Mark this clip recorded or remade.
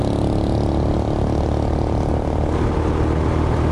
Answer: recorded